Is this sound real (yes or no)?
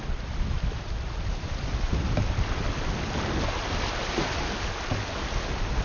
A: yes